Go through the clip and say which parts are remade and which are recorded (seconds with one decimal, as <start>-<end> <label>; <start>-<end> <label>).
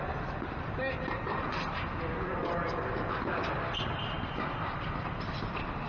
0.0-5.9 recorded